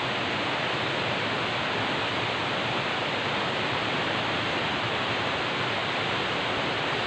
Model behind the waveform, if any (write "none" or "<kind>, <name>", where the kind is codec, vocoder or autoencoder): none